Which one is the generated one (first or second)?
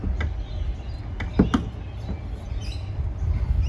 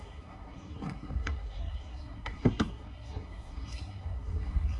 second